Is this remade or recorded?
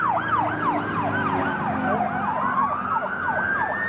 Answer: recorded